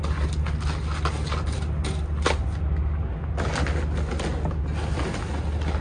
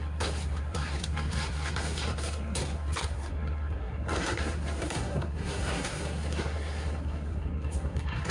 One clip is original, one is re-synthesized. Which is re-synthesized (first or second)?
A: second